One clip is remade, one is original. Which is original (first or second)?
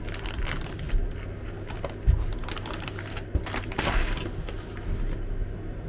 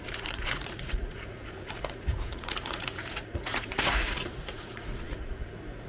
first